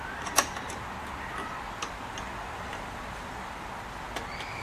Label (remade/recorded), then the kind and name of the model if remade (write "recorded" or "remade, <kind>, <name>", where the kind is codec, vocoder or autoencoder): recorded